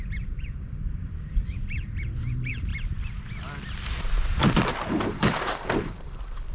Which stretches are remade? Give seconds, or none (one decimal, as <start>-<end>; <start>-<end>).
0.0-2.7; 4.9-6.5